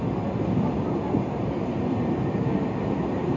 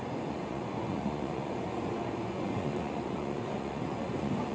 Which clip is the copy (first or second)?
second